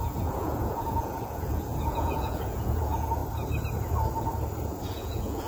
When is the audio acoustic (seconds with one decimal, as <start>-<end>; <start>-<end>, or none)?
3.2-4.9